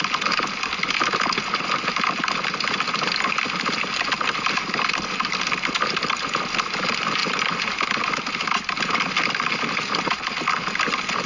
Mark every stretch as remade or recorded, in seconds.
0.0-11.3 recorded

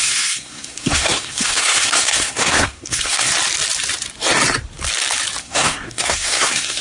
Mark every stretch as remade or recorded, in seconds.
0.0-3.3 remade; 3.3-5.4 recorded; 5.4-6.8 remade

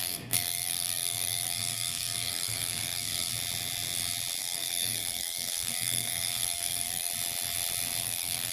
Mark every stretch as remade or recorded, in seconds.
0.0-3.3 remade; 3.3-4.4 recorded; 4.4-7.1 remade; 7.1-8.0 recorded; 8.0-8.5 remade

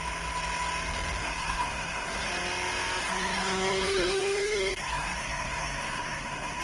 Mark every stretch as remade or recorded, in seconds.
0.0-1.2 recorded; 1.2-2.3 remade; 2.3-3.0 recorded; 3.0-6.6 remade

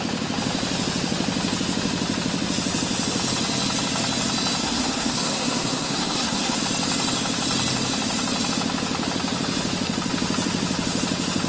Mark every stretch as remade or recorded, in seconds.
0.0-4.6 recorded; 4.6-6.6 remade; 6.6-11.5 recorded

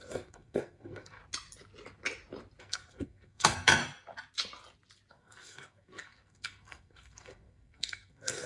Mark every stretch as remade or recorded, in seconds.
0.0-1.2 remade; 1.2-2.6 recorded; 2.6-3.8 remade; 3.8-5.1 recorded; 5.1-8.5 remade

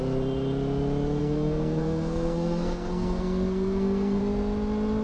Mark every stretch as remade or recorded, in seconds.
0.0-1.2 recorded; 1.2-4.2 remade; 4.2-5.0 recorded